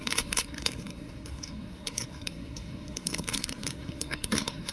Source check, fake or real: fake